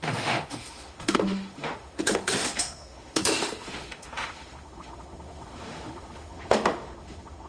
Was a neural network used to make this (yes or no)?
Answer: yes